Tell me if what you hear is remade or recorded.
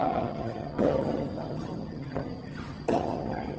remade